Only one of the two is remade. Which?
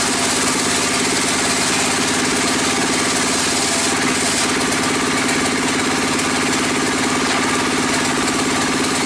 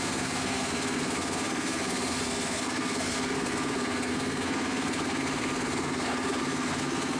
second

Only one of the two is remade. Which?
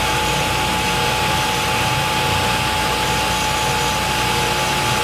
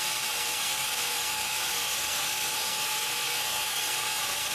second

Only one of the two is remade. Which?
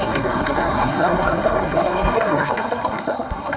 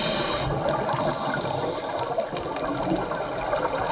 first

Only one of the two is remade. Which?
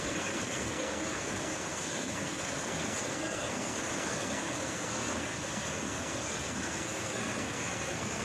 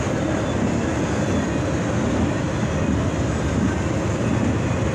first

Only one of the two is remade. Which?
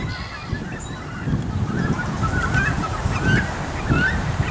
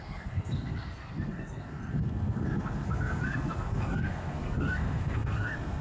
second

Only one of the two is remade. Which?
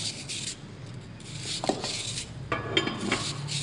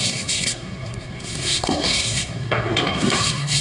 second